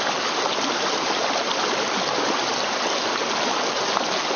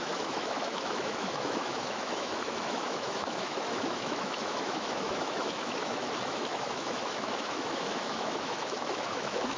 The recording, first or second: first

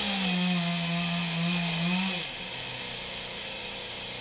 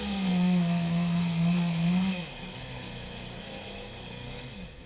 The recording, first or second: first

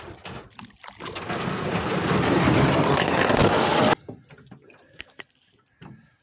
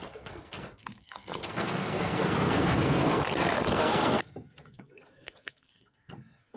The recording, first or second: first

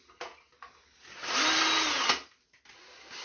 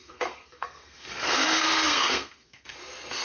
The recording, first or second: first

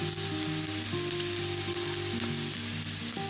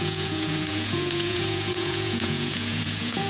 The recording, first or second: first